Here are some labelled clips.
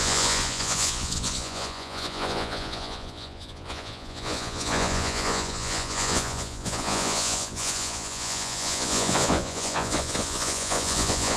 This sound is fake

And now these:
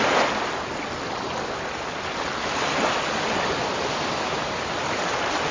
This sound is real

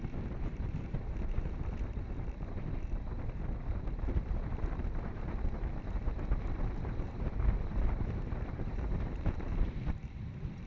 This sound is fake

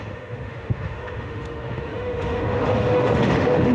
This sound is fake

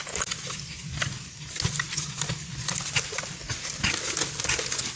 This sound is real